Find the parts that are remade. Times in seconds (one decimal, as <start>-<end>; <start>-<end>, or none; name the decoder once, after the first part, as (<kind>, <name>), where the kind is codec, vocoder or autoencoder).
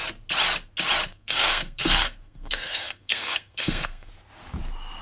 1.1-4.1 (codec, SNAC)